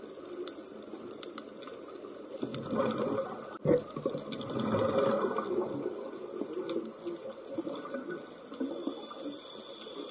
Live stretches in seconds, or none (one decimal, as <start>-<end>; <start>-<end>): 0.0-10.1